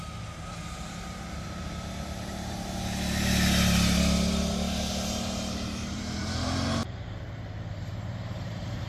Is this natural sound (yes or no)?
no